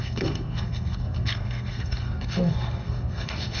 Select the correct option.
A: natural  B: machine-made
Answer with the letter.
B